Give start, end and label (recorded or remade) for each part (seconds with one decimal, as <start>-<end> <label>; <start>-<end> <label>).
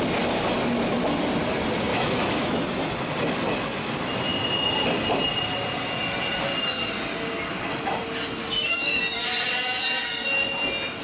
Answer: 0.0-1.9 recorded; 1.9-2.9 remade; 2.9-8.4 recorded; 8.4-9.0 remade; 9.0-11.0 recorded